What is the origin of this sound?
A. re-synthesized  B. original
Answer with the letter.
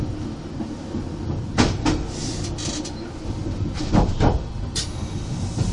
B